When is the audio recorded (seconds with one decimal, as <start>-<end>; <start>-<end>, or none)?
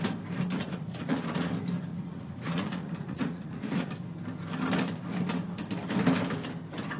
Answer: 0.0-0.6; 1.5-1.9; 3.9-7.0